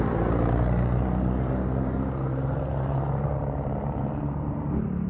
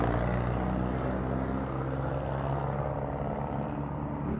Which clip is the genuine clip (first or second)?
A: second